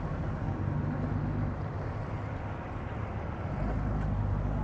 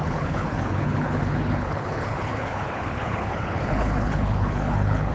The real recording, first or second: first